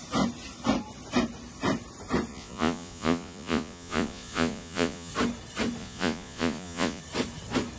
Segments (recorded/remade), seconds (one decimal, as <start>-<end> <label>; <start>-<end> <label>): 0.0-2.3 recorded; 2.3-5.1 remade; 5.1-5.8 recorded; 5.8-7.0 remade; 7.0-7.8 recorded